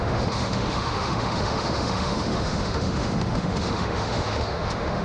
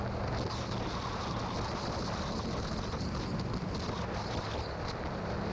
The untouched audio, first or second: second